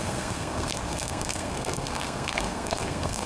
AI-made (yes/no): yes